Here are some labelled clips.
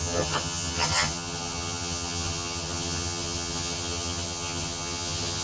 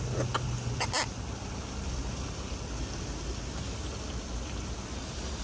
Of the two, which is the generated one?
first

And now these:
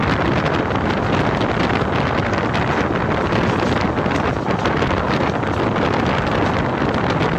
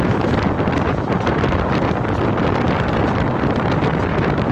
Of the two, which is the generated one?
second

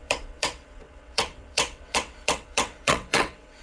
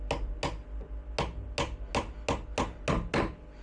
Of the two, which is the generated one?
first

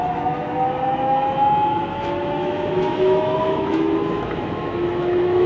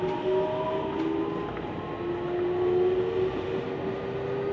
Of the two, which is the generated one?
first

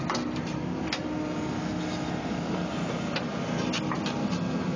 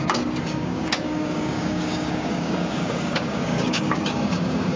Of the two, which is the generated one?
second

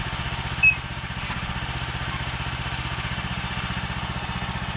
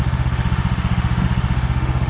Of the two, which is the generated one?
second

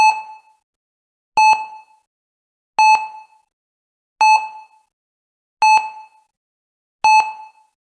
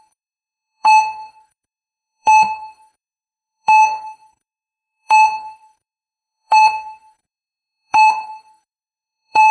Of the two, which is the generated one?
second